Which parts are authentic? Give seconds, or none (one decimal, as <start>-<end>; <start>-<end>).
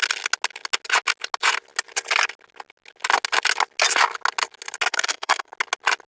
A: 0.0-4.9; 5.5-6.1